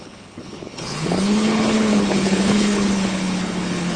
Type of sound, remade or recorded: remade